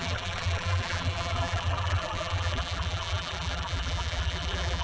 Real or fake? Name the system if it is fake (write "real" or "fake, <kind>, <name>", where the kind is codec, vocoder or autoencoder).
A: fake, vocoder, BigVGAN v2